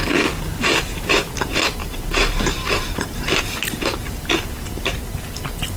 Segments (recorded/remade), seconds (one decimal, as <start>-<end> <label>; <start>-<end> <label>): 0.0-1.8 recorded; 1.8-3.4 remade; 3.4-5.8 recorded